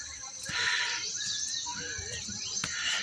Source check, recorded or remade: recorded